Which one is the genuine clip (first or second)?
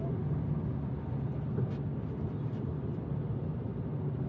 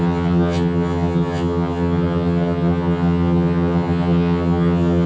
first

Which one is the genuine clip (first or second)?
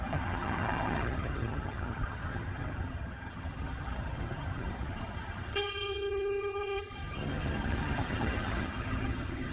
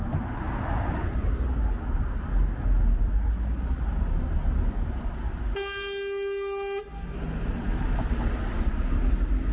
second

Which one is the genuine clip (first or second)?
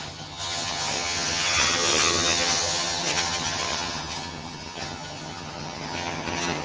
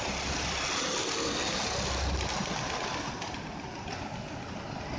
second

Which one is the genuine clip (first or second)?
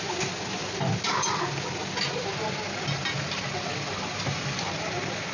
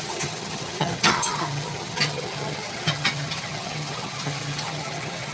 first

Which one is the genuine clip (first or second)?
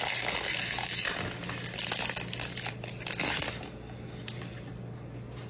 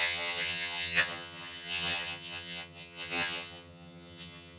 first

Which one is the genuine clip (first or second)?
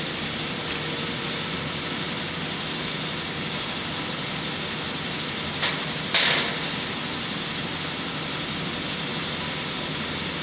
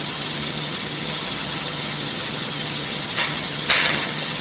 first